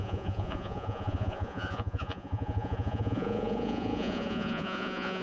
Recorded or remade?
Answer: remade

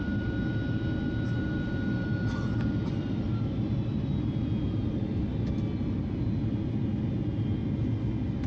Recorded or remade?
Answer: recorded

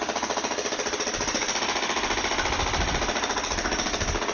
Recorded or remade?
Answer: recorded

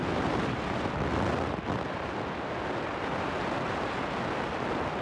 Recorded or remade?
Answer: recorded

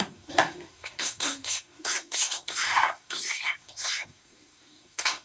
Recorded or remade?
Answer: remade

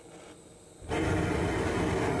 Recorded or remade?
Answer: recorded